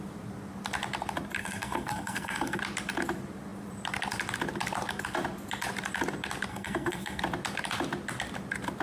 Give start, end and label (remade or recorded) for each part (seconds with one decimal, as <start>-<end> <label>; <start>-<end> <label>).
0.0-1.4 recorded; 1.4-2.6 remade; 2.6-6.5 recorded; 6.5-7.2 remade; 7.2-8.8 recorded